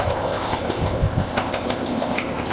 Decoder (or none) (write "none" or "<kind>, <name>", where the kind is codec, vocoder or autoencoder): codec, ZipCodec